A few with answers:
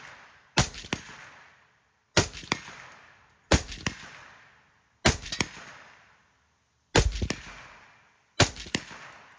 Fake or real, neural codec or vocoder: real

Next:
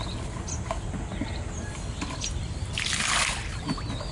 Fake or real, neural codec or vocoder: real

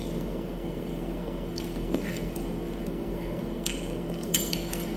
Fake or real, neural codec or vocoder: fake, codec, SNAC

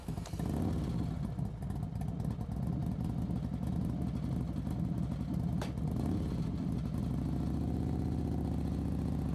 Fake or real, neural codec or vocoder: real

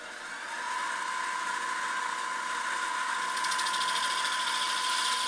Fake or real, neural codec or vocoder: real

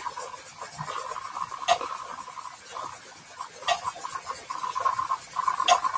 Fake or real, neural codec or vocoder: real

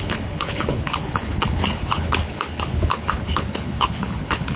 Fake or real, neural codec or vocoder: fake, codec, HILCodec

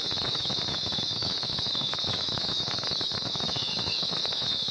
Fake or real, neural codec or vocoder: fake, autoencoder, DAC-VAE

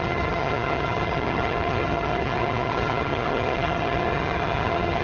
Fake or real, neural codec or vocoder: fake, vocoder, HiFi-GAN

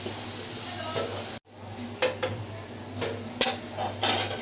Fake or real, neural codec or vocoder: real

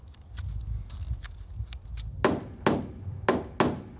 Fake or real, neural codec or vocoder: real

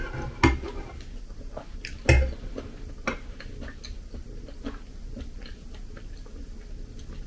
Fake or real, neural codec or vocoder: real